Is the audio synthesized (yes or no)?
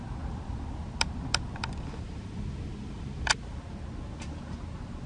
no